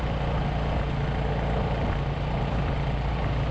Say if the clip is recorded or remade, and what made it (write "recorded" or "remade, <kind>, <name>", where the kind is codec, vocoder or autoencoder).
recorded